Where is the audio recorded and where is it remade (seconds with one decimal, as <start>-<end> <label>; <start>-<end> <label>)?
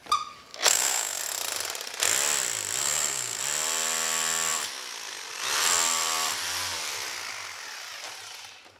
0.0-0.5 recorded; 0.5-1.2 remade; 1.2-2.8 recorded; 2.8-3.4 remade; 3.4-8.8 recorded